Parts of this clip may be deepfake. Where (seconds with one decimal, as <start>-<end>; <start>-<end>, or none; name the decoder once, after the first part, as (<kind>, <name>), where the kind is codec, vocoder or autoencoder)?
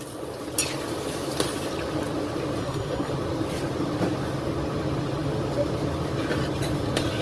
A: 2.6-3.1 (codec, SNAC)